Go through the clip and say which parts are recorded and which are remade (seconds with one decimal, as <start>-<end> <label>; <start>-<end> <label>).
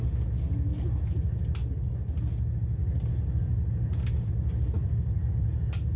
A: 0.0-6.0 recorded